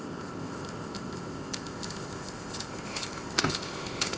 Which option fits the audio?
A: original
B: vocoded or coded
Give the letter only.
B